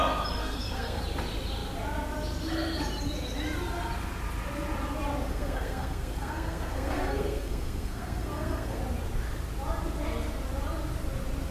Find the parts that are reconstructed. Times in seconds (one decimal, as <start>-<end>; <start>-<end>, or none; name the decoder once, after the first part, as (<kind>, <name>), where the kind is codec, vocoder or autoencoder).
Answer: 0.4-1.0 (codec, SNAC); 5.3-8.8